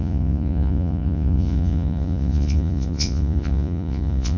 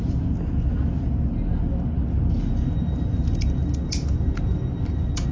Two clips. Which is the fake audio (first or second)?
first